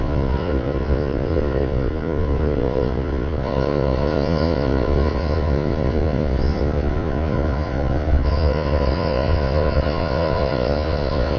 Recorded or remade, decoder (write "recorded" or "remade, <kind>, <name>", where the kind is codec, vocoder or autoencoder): remade, vocoder, Vocos